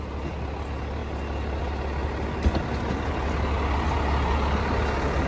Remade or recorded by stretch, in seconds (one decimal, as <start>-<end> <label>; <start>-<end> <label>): 0.0-5.3 recorded

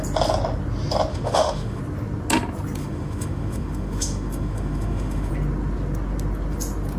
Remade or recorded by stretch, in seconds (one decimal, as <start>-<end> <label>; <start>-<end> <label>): 0.0-1.1 recorded; 1.1-1.8 remade; 1.8-2.8 recorded; 2.8-5.3 remade; 5.3-7.0 recorded

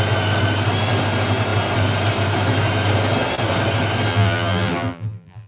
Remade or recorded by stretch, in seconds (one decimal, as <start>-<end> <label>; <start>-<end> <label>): 0.0-4.1 recorded; 4.1-5.5 remade

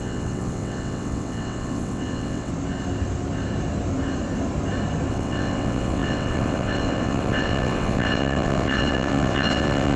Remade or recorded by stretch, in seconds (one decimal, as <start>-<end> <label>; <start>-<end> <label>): 0.0-2.5 remade; 2.5-5.1 recorded; 5.1-10.0 remade

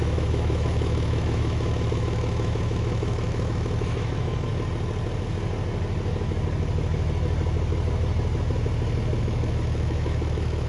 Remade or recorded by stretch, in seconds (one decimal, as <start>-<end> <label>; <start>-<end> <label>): 0.0-4.5 remade; 4.5-9.2 recorded; 9.2-10.7 remade

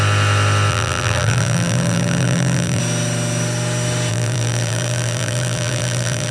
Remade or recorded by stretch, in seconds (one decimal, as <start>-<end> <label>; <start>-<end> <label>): 0.0-0.7 recorded; 0.7-2.8 remade; 2.8-4.1 recorded; 4.1-6.3 remade

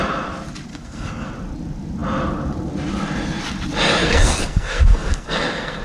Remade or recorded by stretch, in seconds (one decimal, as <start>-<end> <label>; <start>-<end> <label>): 0.0-0.7 recorded; 0.7-1.3 remade; 1.3-4.0 recorded; 4.0-5.8 remade